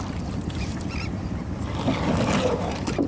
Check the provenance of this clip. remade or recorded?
recorded